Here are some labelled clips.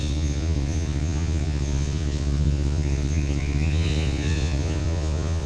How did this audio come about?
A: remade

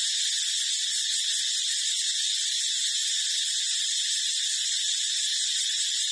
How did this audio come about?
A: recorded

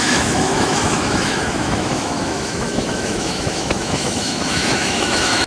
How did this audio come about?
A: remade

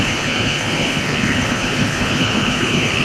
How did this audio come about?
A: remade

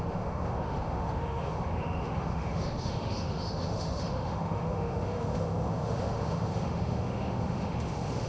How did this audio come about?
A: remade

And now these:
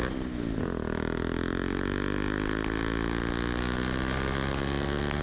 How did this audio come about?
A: recorded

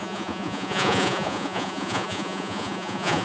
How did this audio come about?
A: remade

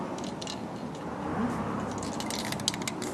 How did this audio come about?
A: recorded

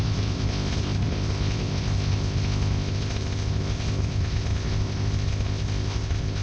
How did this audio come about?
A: remade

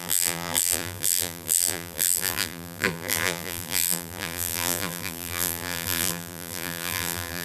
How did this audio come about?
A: remade